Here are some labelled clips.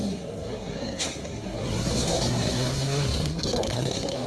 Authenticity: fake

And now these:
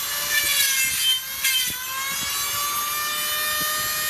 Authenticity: real